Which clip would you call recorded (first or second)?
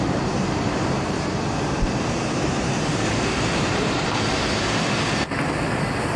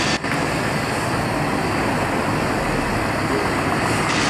second